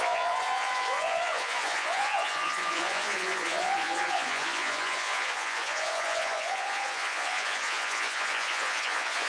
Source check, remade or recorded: remade